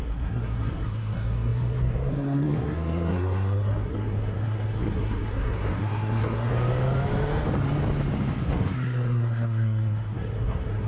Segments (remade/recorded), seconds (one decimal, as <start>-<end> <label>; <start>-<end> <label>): 0.0-6.5 remade; 6.5-8.4 recorded; 8.4-10.9 remade

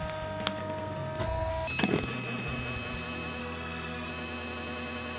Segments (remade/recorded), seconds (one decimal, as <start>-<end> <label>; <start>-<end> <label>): 0.0-0.6 recorded; 0.6-1.5 remade; 1.5-3.4 recorded; 3.4-4.1 remade; 4.1-5.2 recorded

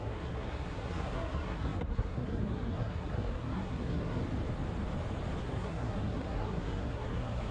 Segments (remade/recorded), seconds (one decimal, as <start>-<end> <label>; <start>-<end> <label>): 0.0-4.2 remade; 4.2-5.4 recorded; 5.4-7.5 remade